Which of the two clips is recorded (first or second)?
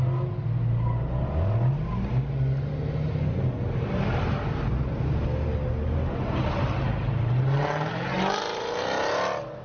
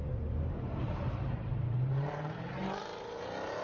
first